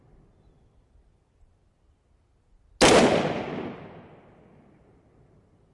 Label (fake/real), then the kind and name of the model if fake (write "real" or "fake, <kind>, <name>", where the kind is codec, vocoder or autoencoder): real